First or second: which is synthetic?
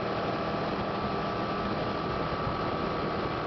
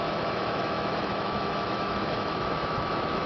second